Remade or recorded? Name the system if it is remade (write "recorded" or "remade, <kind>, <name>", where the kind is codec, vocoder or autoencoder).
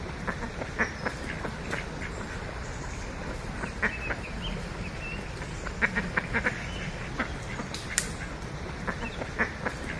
recorded